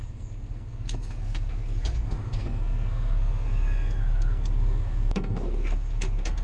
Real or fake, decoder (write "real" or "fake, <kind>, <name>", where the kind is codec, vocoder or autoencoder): fake, codec, SNAC